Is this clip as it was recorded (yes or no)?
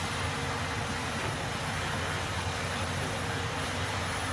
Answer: yes